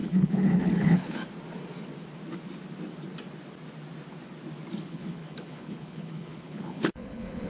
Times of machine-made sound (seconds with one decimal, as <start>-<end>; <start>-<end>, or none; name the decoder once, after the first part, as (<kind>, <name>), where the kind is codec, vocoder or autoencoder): 0.0-1.2 (codec, HILCodec); 4.8-7.5